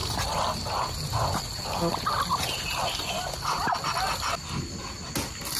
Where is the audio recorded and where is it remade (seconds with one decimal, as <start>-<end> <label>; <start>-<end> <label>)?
0.0-5.6 recorded